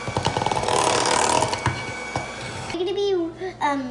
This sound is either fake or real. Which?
real